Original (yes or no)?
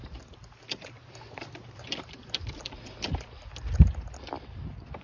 yes